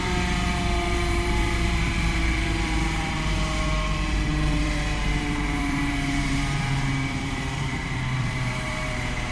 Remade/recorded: remade